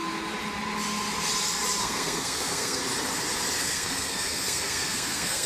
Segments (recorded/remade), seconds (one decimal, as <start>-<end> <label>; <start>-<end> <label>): 0.0-1.8 recorded; 1.8-2.8 remade; 2.8-3.6 recorded; 3.6-5.5 remade